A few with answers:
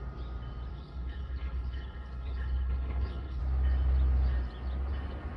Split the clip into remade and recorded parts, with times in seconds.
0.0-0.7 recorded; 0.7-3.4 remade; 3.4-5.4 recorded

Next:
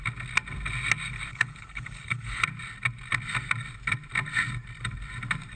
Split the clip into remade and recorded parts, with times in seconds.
0.0-1.3 recorded; 1.3-2.4 remade; 2.4-5.6 recorded

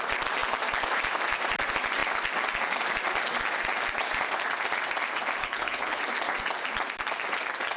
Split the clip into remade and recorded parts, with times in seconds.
0.0-5.4 recorded; 5.4-6.0 remade; 6.0-7.8 recorded

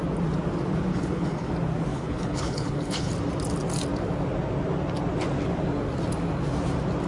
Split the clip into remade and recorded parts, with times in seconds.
0.0-0.9 recorded; 0.9-1.5 remade; 1.5-1.9 recorded; 1.9-3.1 remade; 3.1-7.1 recorded

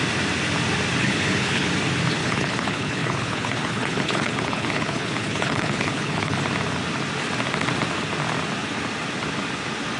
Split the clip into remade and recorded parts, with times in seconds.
0.0-1.0 recorded; 1.0-1.7 remade; 1.7-2.2 recorded; 2.2-6.4 remade; 6.4-10.0 recorded

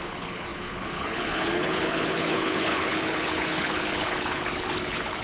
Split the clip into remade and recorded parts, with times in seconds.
0.0-5.2 remade

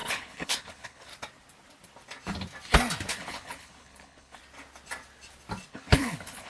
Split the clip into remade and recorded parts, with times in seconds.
0.0-1.1 remade; 1.1-3.1 recorded; 3.1-4.4 remade; 4.4-5.7 recorded; 5.7-6.5 remade

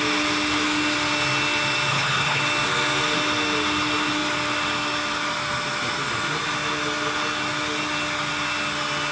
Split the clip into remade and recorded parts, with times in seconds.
0.0-1.9 recorded; 1.9-2.4 remade; 2.4-9.1 recorded